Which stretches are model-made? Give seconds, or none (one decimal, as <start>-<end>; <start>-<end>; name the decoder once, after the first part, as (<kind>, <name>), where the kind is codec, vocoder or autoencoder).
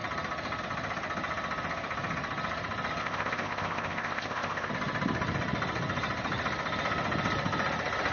3.0-4.7 (codec, ZipCodec)